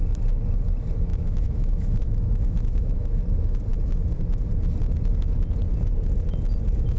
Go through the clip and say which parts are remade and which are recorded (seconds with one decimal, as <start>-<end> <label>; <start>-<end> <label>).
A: 0.0-1.1 recorded; 1.1-3.2 remade; 3.2-7.0 recorded